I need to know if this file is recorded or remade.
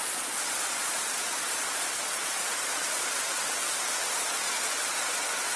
remade